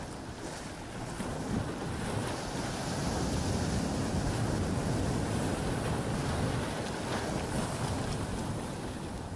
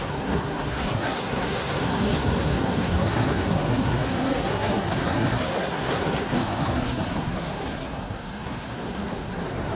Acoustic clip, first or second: first